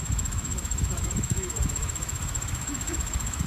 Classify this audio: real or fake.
fake